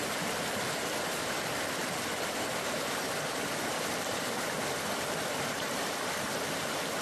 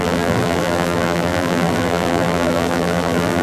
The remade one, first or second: second